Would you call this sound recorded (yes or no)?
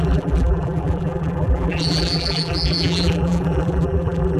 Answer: no